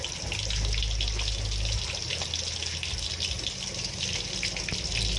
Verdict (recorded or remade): recorded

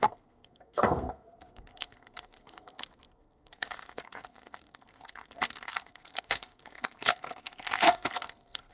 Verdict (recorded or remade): remade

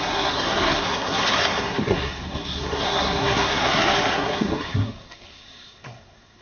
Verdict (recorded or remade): remade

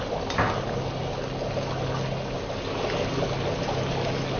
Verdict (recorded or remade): recorded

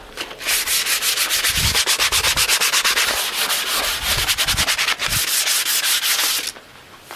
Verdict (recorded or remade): recorded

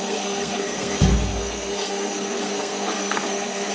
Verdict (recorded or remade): remade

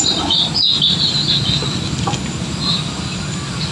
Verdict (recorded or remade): recorded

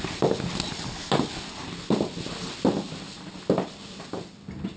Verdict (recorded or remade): recorded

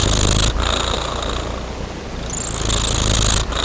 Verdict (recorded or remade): recorded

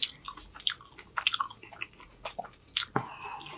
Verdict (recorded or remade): recorded